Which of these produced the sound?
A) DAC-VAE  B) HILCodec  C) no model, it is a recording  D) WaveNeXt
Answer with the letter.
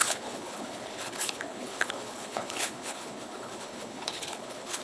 B